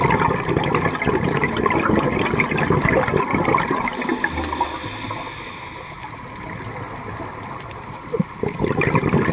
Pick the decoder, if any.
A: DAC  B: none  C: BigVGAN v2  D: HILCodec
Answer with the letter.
B